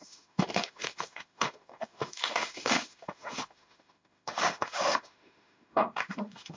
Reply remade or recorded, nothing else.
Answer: remade